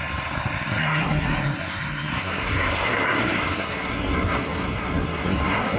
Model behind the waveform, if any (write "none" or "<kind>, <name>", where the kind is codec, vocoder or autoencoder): codec, SNAC